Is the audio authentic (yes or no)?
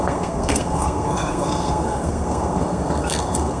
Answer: no